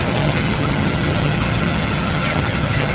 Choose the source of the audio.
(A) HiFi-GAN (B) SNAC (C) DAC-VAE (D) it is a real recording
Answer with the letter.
A